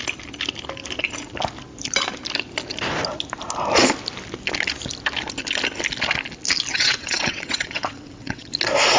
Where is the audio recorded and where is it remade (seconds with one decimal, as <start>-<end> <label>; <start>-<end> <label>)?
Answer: 0.0-6.7 recorded; 6.7-8.5 remade; 8.5-9.0 recorded